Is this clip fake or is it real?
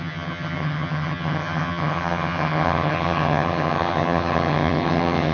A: fake